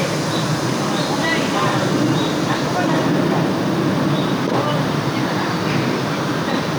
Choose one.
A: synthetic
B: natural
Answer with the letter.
B